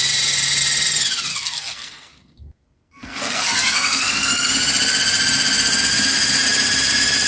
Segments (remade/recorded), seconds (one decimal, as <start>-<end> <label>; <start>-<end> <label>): 0.0-1.3 recorded; 1.3-4.5 remade; 4.5-7.3 recorded